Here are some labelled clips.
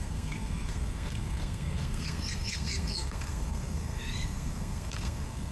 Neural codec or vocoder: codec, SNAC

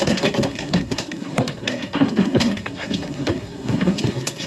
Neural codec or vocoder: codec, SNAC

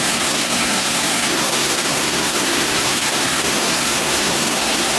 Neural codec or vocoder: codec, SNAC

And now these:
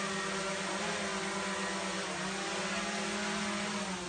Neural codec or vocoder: none